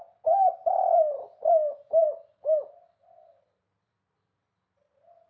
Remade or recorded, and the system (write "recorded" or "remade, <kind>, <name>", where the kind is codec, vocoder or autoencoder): recorded